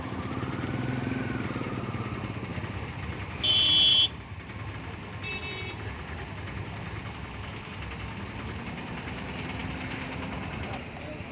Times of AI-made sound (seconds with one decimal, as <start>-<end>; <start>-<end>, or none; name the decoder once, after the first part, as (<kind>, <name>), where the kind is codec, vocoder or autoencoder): 3.9-4.7 (vocoder, BigVGAN v2)